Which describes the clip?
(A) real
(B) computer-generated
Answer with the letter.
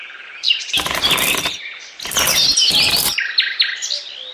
A